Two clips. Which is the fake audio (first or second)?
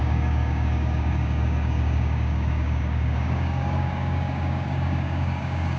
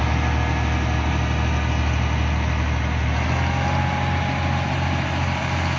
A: first